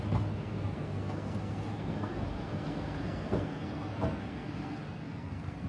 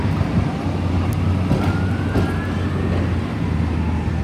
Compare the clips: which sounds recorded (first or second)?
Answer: second